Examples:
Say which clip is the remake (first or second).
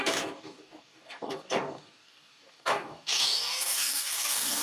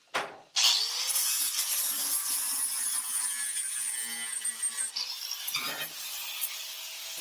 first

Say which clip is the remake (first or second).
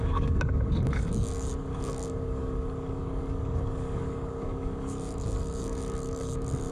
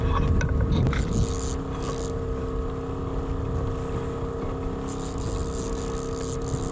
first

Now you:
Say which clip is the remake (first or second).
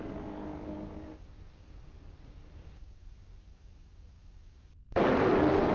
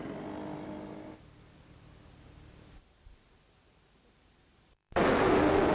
first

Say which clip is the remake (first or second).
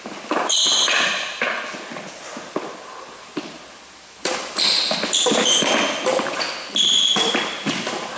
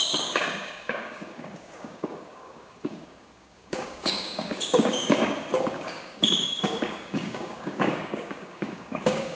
second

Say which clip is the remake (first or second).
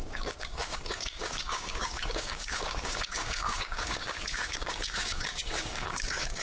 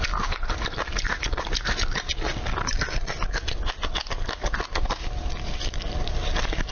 first